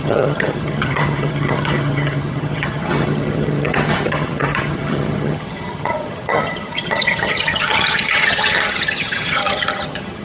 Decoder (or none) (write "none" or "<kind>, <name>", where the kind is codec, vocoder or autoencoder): vocoder, HiFi-GAN